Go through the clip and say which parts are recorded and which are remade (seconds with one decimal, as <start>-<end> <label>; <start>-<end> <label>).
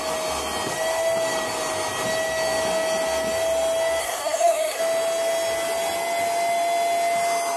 0.0-4.0 recorded; 4.0-4.8 remade; 4.8-7.6 recorded